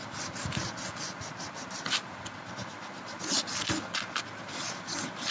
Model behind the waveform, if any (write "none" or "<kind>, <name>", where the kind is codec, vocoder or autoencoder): none